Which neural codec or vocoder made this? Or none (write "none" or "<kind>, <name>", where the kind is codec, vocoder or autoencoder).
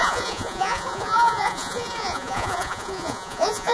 vocoder, Vocos